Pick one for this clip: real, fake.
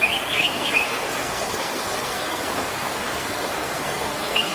fake